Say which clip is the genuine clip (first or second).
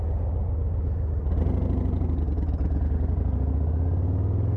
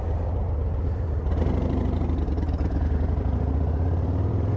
first